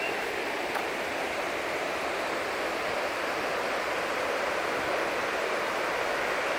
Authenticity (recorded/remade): recorded